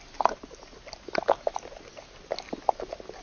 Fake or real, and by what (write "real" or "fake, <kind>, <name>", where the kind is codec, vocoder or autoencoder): real